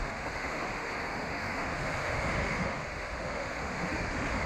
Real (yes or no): no